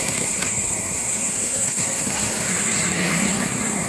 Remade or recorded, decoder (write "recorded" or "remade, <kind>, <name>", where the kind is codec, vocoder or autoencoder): remade, codec, SNAC